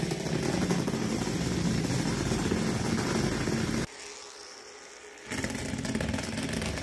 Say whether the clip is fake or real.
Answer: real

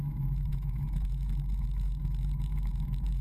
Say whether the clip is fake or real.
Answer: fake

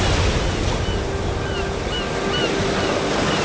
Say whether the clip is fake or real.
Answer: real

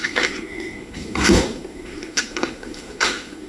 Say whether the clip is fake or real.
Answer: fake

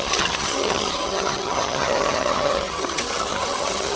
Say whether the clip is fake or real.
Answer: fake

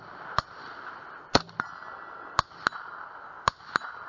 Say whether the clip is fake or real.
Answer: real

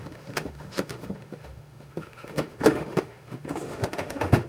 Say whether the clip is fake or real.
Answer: fake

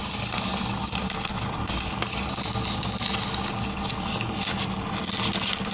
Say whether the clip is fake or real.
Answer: real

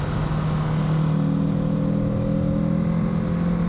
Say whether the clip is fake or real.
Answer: real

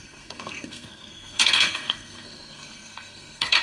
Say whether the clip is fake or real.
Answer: fake